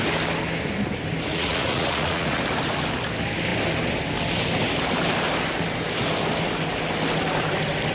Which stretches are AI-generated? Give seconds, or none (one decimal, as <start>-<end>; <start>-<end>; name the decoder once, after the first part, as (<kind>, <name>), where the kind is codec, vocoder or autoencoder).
1.3-2.4 (vocoder, Vocos)